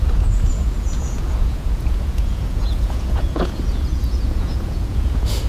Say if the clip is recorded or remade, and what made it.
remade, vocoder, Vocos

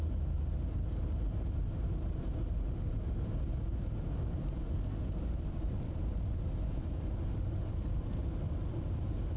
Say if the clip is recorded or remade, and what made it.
recorded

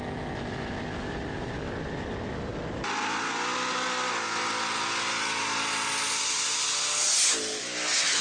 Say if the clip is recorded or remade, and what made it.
recorded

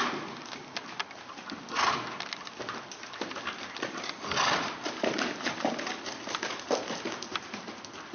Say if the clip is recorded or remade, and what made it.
recorded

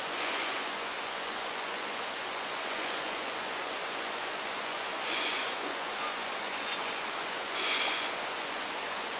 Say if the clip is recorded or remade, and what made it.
remade, vocoder, Vocos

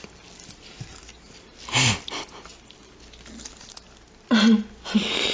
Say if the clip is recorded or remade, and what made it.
recorded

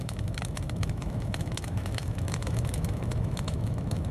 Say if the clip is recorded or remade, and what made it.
remade, autoencoder, DAC-VAE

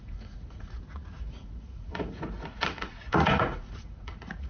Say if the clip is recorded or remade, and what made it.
remade, vocoder, Vocos